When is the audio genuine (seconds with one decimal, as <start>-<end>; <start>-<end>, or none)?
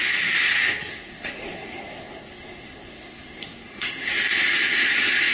0.0-0.9; 4.1-5.3